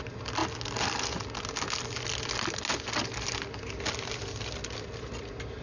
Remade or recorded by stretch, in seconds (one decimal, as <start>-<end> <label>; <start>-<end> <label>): 0.0-5.6 recorded